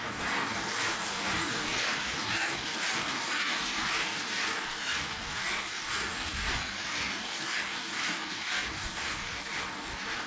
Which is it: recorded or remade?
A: remade